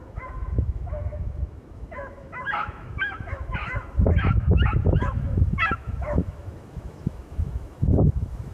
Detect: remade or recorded remade